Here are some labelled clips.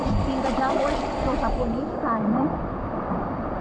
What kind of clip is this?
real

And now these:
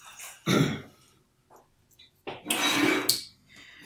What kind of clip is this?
real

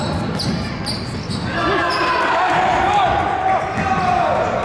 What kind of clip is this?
real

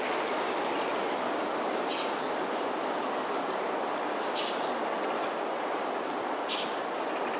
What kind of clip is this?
real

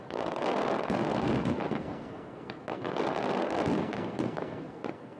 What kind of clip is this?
fake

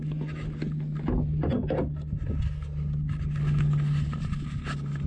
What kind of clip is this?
real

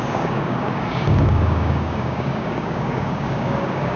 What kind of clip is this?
fake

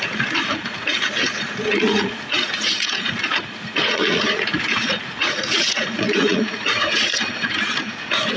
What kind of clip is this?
fake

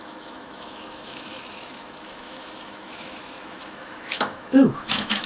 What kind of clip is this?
fake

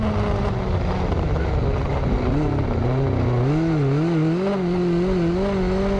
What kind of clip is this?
real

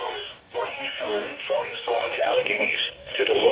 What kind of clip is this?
fake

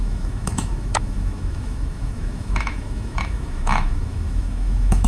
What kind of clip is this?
fake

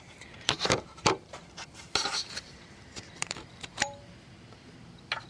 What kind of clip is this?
fake